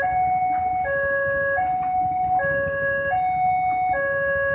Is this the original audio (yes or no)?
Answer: yes